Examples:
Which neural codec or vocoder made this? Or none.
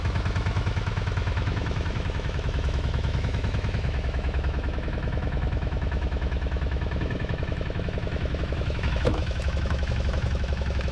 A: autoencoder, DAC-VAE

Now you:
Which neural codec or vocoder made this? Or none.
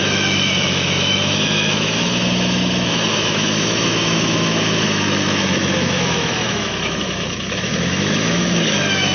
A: autoencoder, DAC-VAE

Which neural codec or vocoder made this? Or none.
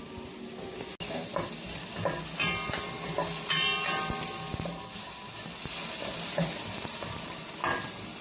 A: none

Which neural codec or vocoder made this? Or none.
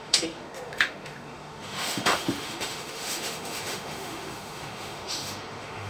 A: autoencoder, DAC-VAE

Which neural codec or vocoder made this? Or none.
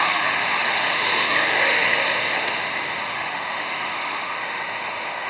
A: autoencoder, DAC-VAE